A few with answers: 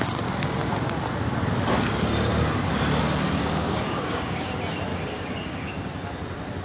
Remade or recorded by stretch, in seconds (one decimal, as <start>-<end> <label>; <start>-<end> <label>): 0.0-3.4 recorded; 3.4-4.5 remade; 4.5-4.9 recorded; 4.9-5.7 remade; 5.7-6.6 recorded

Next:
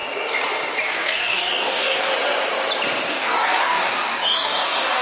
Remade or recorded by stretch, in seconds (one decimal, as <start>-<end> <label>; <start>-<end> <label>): 0.0-0.8 recorded; 0.8-2.1 remade; 2.1-3.1 recorded; 3.1-5.0 remade

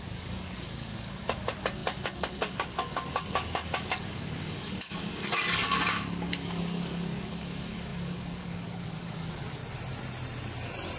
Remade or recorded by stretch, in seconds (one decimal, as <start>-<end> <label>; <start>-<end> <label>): 0.0-9.6 remade; 9.6-11.0 recorded